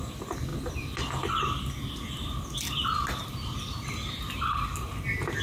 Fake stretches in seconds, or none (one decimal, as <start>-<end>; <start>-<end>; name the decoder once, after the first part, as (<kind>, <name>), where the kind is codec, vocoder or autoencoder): none